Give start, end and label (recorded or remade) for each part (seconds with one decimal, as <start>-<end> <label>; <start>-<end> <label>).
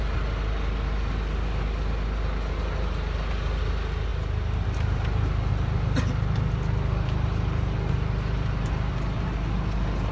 0.0-10.1 recorded